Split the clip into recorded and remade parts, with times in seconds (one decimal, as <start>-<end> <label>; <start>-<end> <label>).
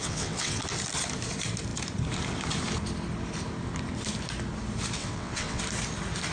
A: 0.0-0.6 remade; 0.6-5.0 recorded; 5.0-5.6 remade; 5.6-6.3 recorded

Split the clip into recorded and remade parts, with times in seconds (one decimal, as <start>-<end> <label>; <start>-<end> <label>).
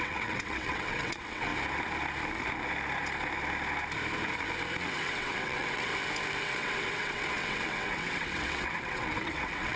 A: 0.0-1.5 remade; 1.5-4.8 recorded; 4.8-5.9 remade; 5.9-6.4 recorded; 6.4-9.8 remade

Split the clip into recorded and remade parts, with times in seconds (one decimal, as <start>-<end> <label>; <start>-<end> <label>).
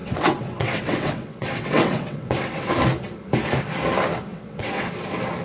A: 0.0-2.7 remade; 2.7-4.3 recorded; 4.3-4.9 remade; 4.9-5.4 recorded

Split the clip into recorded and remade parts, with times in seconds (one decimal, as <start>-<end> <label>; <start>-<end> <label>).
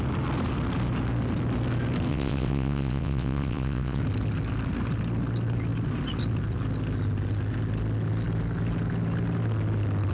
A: 0.0-2.1 recorded; 2.1-4.0 remade; 4.0-10.1 recorded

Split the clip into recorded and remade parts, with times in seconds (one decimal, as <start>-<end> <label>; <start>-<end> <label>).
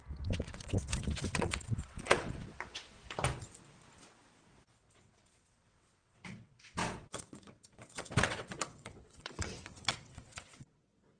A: 0.0-3.0 remade; 3.0-4.9 recorded; 4.9-11.2 remade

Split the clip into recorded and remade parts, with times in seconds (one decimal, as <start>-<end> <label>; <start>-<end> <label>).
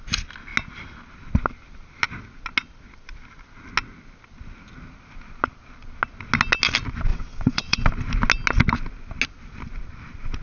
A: 0.0-7.1 recorded; 7.1-7.9 remade; 7.9-10.4 recorded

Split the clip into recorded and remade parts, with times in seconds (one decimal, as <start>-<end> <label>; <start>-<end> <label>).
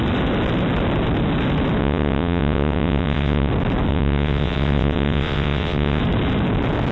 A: 0.0-1.8 recorded; 1.8-3.5 remade; 3.5-3.9 recorded; 3.9-6.0 remade; 6.0-6.9 recorded